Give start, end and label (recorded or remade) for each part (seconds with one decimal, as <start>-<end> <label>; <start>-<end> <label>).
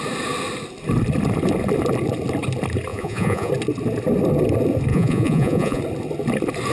0.0-2.9 recorded; 2.9-3.5 remade; 3.5-4.9 recorded; 4.9-5.8 remade; 5.8-6.7 recorded